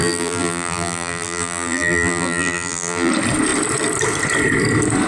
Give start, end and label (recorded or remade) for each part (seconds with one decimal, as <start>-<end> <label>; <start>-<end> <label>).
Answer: 0.0-3.1 remade; 3.1-5.1 recorded